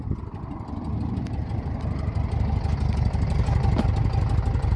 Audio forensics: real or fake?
real